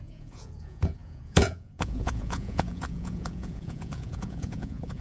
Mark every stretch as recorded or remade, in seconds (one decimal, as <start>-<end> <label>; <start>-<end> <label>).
0.0-5.0 remade